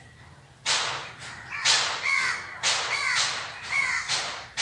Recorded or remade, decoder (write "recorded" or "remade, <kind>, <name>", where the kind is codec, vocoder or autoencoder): recorded